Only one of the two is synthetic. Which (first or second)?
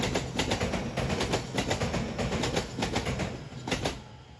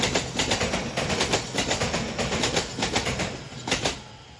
second